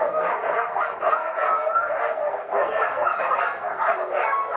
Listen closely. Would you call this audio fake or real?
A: fake